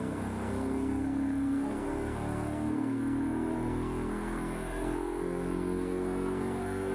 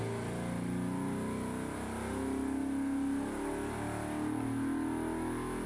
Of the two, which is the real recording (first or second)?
second